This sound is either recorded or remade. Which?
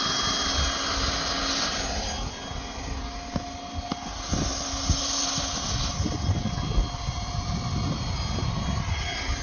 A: recorded